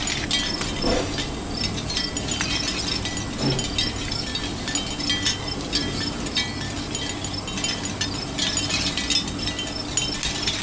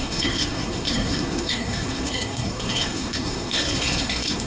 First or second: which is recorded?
first